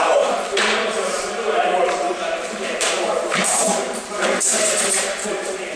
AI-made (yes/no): yes